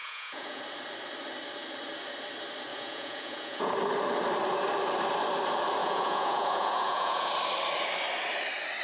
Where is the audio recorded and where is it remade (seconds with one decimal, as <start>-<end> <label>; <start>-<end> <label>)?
0.0-0.6 remade; 0.6-2.7 recorded; 2.7-3.7 remade; 3.7-5.8 recorded; 5.8-7.3 remade; 7.3-8.8 recorded